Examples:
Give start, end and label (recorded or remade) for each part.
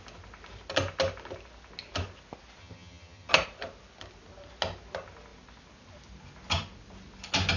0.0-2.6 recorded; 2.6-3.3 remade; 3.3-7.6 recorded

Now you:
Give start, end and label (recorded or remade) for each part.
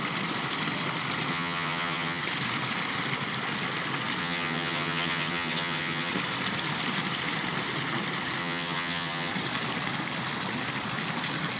0.0-1.3 recorded; 1.3-2.2 remade; 2.2-4.2 recorded; 4.2-6.1 remade; 6.1-8.4 recorded; 8.4-9.3 remade; 9.3-11.6 recorded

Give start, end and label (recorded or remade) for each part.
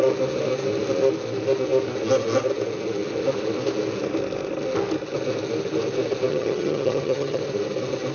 0.0-6.3 recorded; 6.3-7.4 remade; 7.4-8.1 recorded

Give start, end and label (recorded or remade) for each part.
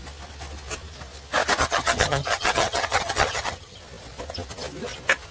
0.0-1.6 recorded; 1.6-3.8 remade; 3.8-5.3 recorded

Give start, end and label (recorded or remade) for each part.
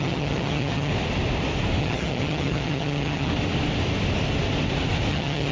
0.0-0.9 remade; 0.9-1.8 recorded; 1.8-3.3 remade; 3.3-5.1 recorded; 5.1-5.5 remade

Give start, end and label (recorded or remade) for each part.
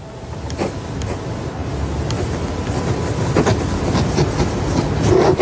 0.0-5.4 recorded